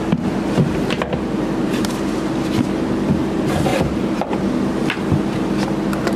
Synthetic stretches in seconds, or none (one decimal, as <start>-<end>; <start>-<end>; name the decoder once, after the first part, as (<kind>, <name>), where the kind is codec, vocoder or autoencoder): 3.7-4.5 (vocoder, BigVGAN v2)